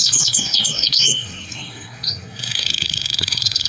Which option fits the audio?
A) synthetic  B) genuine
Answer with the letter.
A